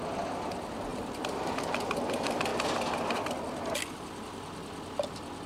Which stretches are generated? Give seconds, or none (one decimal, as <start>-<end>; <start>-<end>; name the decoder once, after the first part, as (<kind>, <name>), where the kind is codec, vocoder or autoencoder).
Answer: 0.9-1.8 (vocoder, BigVGAN v2)